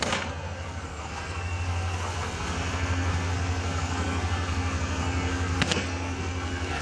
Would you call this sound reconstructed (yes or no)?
yes